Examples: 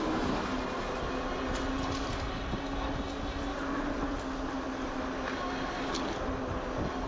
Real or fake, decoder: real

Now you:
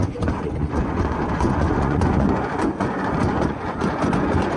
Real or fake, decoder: fake, vocoder, Vocos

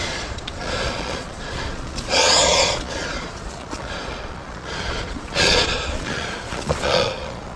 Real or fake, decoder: fake, vocoder, Vocos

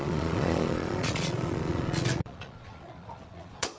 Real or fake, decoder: fake, vocoder, Vocos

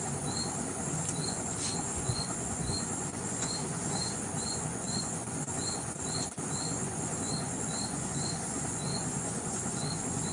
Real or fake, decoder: fake, vocoder, Vocos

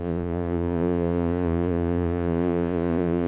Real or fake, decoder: fake, vocoder, Vocos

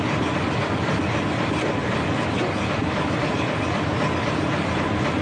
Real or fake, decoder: real